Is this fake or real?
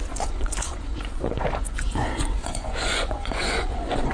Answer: fake